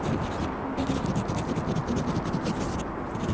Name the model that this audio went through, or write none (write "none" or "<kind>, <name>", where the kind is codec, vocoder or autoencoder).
none